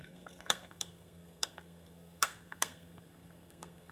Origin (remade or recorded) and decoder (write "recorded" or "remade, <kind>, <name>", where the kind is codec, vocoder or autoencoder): remade, codec, SNAC